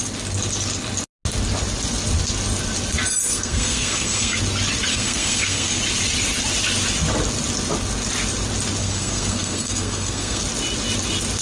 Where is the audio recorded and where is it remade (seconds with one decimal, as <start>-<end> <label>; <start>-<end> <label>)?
0.0-3.2 recorded; 3.2-4.4 remade; 4.4-4.9 recorded; 4.9-5.8 remade; 5.8-8.8 recorded; 8.8-10.4 remade; 10.4-11.4 recorded